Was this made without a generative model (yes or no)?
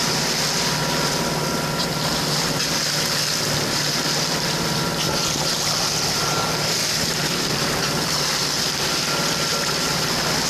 yes